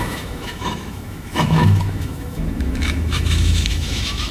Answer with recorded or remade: remade